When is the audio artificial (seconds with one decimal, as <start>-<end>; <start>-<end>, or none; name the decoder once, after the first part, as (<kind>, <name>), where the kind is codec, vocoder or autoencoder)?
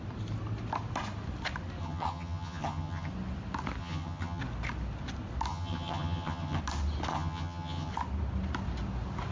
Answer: 1.8-3.1 (vocoder, HiFi-GAN); 3.8-4.4; 5.5-6.6; 7.1-7.9